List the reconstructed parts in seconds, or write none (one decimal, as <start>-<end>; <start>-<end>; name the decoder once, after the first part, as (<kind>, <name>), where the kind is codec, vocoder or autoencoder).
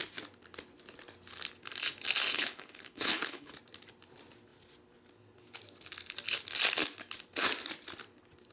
2.3-3.5 (codec, HILCodec)